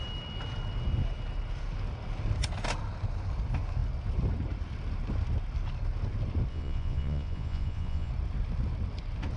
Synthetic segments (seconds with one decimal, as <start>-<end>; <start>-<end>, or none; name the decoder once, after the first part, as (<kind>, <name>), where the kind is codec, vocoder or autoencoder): 6.5-8.1 (vocoder, Vocos)